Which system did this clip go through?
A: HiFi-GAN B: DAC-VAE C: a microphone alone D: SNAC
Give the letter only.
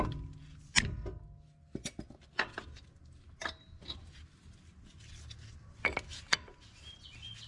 C